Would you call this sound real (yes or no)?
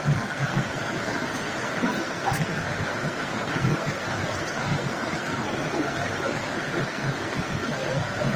no